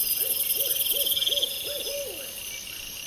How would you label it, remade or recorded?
recorded